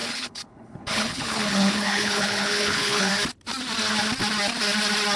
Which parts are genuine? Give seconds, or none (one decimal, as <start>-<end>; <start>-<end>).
3.1-5.2